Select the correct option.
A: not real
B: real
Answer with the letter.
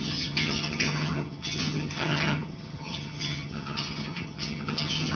A